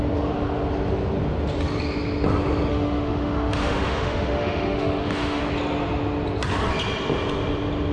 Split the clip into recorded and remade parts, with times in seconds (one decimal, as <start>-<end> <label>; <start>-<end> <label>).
0.0-2.7 recorded; 2.7-5.4 remade; 5.4-7.9 recorded